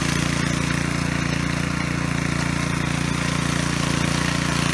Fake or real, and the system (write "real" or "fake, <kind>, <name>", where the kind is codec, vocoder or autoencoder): real